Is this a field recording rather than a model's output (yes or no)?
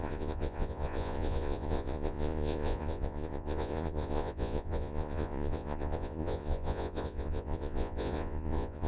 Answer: no